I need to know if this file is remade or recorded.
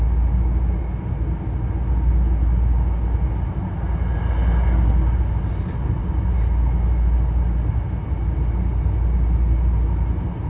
recorded